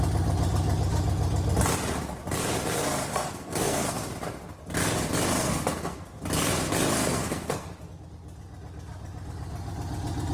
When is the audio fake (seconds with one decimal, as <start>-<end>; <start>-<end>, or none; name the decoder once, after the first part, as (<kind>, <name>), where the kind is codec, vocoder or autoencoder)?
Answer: 3.1-4.0 (codec, SNAC); 5.4-6.2; 7.1-7.7